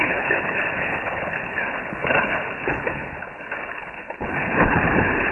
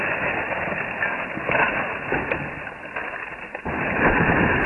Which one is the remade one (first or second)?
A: first